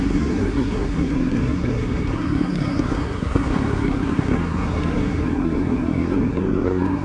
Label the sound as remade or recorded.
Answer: remade